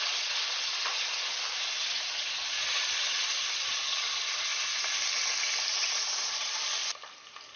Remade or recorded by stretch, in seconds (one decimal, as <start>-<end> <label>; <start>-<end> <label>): 0.0-4.5 remade; 4.5-5.8 recorded; 5.8-6.8 remade; 6.8-7.6 recorded